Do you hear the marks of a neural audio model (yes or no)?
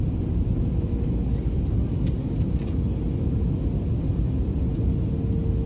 no